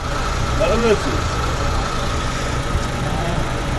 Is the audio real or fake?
fake